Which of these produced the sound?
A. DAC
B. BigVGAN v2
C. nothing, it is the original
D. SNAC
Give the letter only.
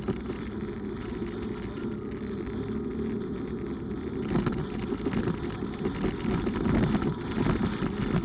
C